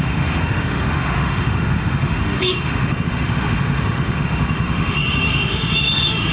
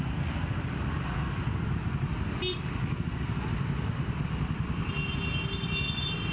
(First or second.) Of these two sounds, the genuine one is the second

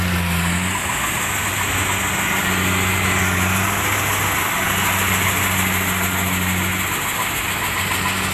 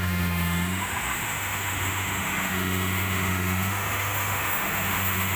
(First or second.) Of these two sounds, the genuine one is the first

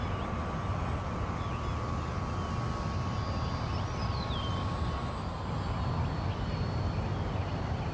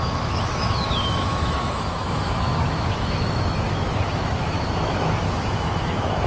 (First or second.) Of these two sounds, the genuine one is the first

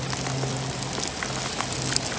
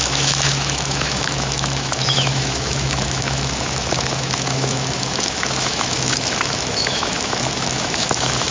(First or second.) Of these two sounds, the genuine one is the first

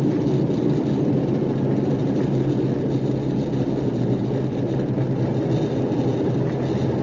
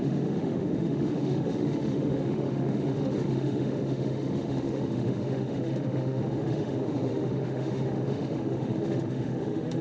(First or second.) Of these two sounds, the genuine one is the first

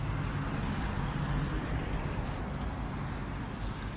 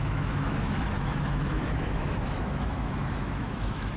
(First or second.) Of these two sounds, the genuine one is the first